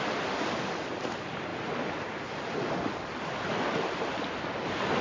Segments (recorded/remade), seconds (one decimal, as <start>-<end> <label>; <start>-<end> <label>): 0.0-1.5 recorded; 1.5-2.7 remade; 2.7-5.0 recorded